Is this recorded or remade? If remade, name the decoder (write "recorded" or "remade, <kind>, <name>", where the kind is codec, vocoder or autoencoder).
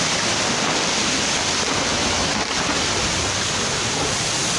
remade, vocoder, BigVGAN v2